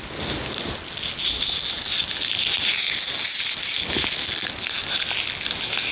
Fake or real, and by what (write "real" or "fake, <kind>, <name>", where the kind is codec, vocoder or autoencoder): real